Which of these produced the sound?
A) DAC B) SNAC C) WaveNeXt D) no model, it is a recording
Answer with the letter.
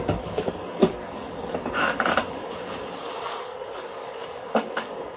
A